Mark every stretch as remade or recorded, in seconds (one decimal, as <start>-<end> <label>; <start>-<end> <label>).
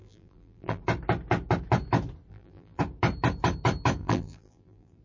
0.0-0.8 remade; 0.8-2.3 recorded; 2.3-2.8 remade; 2.8-4.0 recorded; 4.0-5.0 remade